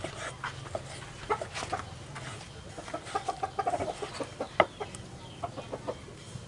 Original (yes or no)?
yes